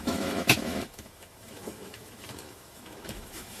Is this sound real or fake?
fake